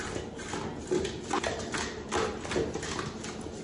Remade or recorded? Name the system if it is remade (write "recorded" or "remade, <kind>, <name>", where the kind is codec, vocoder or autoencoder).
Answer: recorded